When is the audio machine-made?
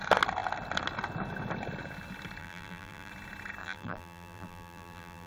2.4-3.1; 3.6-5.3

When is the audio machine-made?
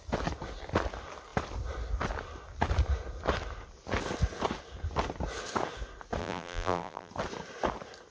6.2-7.1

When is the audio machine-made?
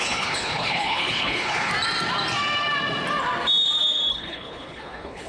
0.0-1.7; 4.1-5.3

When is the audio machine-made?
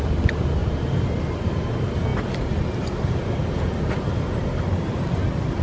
none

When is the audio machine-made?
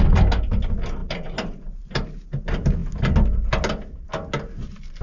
none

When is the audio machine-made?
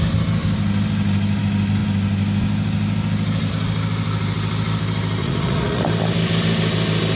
5.2-5.8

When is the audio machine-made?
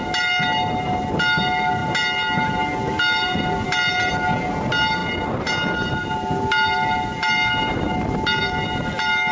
none